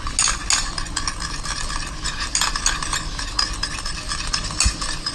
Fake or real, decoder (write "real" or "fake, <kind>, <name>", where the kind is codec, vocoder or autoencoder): real